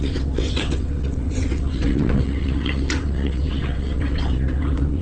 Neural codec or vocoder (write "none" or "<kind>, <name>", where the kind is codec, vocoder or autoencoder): vocoder, WaveNeXt